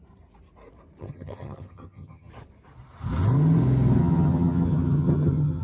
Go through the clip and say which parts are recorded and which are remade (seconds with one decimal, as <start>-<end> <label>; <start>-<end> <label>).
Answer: 0.0-1.0 recorded; 1.0-2.3 remade; 2.3-4.0 recorded; 4.0-5.6 remade